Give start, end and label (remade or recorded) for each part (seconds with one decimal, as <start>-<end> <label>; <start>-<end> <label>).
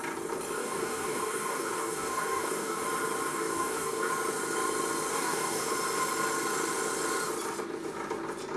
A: 0.0-0.6 recorded; 0.6-2.8 remade; 2.8-3.3 recorded; 3.3-4.1 remade; 4.1-5.1 recorded; 5.1-5.7 remade; 5.7-8.6 recorded